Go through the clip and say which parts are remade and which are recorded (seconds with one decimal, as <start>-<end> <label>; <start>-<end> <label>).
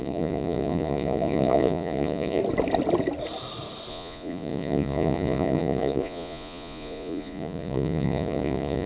0.0-2.4 remade; 2.4-3.9 recorded; 3.9-8.9 remade